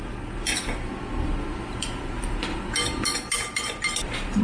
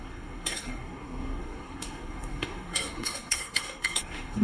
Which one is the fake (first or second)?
second